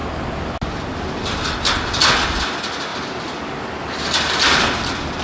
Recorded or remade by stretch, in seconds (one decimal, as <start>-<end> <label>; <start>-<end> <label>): 0.0-5.2 recorded